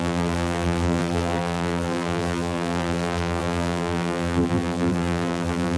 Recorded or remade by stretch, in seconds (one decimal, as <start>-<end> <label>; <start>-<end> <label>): 0.0-5.8 remade